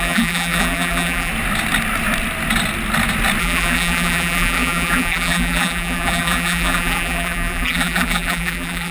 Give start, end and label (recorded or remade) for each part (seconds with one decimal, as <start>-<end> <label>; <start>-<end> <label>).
0.0-1.3 remade; 1.3-3.4 recorded; 3.4-8.9 remade